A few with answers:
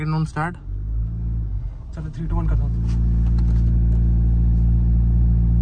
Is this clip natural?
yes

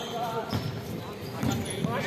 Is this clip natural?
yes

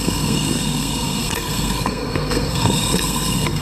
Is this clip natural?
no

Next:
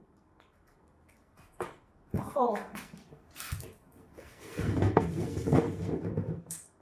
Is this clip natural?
no